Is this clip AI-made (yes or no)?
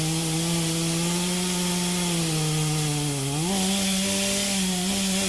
no